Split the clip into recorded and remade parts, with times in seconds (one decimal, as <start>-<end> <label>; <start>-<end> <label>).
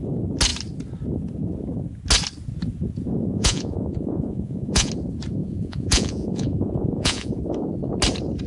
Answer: 0.0-3.3 recorded; 3.3-4.9 remade; 4.9-5.4 recorded; 5.4-7.4 remade; 7.4-8.5 recorded